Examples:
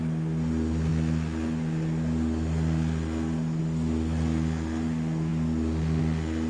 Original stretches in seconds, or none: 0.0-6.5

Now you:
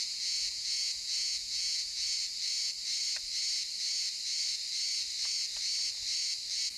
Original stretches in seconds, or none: 2.2-6.8

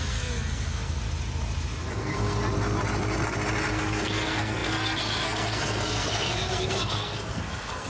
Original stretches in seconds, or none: 1.0-1.9; 2.4-3.7

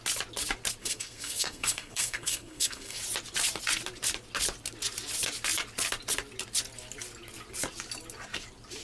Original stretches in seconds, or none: 0.0-0.8; 3.0-8.8

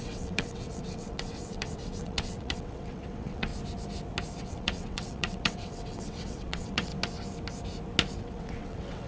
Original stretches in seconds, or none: 3.5-4.4; 6.9-8.2

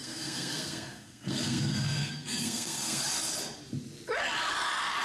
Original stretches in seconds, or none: 3.0-5.0

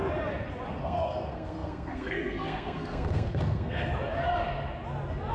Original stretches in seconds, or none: 0.0-0.7; 3.9-5.3